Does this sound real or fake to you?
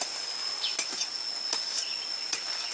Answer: real